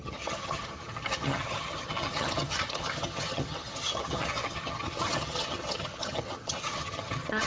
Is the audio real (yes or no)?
no